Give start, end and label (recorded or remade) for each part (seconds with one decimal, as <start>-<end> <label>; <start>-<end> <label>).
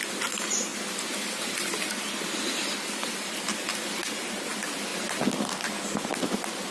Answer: 0.0-6.7 recorded